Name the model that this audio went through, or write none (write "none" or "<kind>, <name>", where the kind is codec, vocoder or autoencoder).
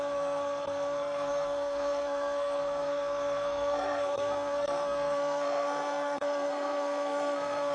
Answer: codec, SNAC